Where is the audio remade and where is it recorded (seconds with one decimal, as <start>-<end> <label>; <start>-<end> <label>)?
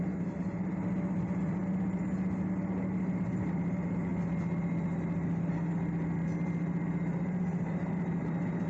0.0-8.7 recorded